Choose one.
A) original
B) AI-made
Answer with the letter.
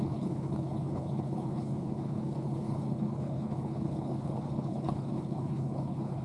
B